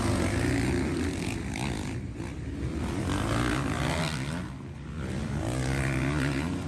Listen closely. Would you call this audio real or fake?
real